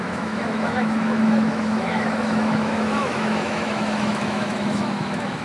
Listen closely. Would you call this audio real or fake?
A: fake